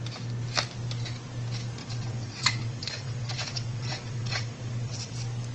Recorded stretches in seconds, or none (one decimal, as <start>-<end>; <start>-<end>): 0.0-1.8; 5.1-5.5